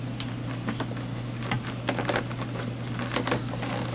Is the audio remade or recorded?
recorded